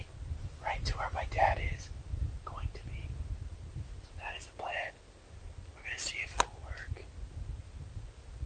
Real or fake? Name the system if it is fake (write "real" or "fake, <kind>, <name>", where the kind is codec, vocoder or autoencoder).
real